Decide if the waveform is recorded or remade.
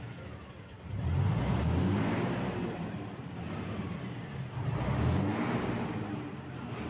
recorded